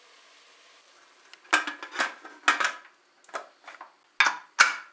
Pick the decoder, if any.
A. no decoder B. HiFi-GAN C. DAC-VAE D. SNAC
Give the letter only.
A